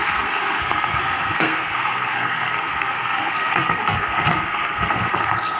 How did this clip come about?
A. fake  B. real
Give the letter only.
A